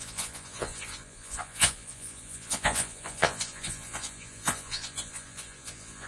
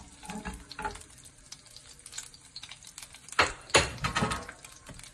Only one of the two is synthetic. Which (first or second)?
first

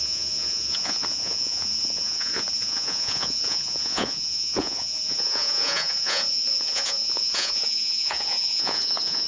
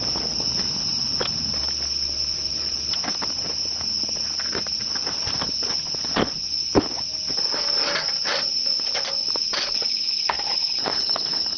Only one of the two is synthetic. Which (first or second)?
first